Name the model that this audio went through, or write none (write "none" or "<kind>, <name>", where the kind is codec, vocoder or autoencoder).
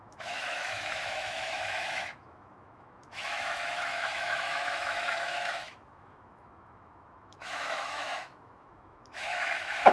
autoencoder, DAC-VAE